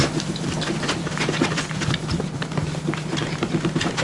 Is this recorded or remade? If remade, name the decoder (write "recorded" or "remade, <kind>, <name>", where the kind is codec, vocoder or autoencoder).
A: recorded